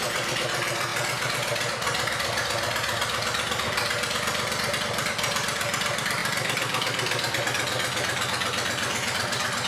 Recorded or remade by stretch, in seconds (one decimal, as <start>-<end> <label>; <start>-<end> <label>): 0.0-9.7 recorded